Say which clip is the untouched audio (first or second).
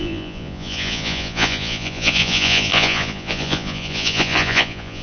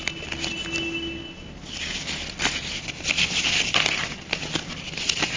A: second